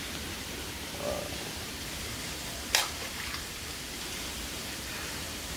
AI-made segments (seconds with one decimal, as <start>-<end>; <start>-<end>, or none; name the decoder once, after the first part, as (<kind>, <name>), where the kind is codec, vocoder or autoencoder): 0.0-0.9 (vocoder, BigVGAN v2); 1.7-5.6